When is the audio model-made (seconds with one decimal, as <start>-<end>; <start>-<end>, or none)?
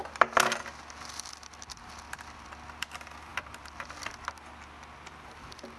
3.3-3.8